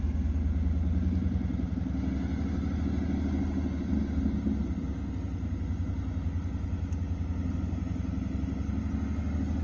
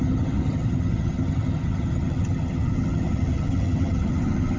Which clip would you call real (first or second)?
first